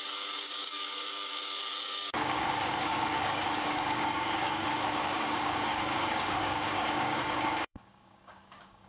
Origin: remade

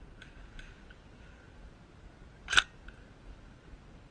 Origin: recorded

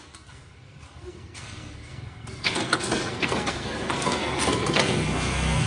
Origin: remade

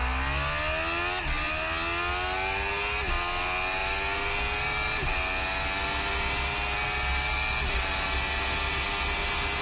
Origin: recorded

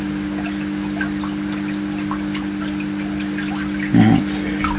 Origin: recorded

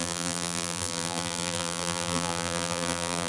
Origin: remade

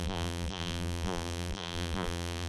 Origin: remade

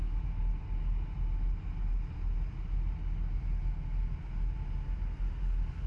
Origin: recorded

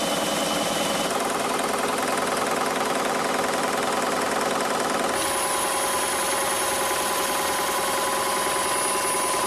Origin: recorded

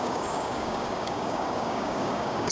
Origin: remade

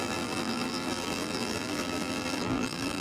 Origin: remade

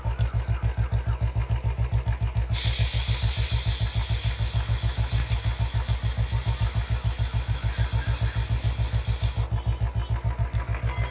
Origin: recorded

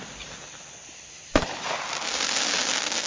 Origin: recorded